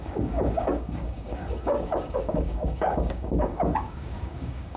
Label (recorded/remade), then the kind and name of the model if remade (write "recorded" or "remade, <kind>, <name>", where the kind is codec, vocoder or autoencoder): remade, codec, DAC